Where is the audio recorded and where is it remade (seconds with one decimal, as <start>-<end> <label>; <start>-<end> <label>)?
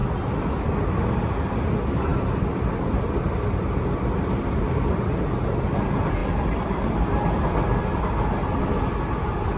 0.0-0.8 remade; 0.8-2.1 recorded; 2.1-2.7 remade; 2.7-6.2 recorded; 6.2-8.6 remade; 8.6-9.6 recorded